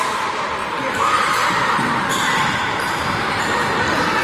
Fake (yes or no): yes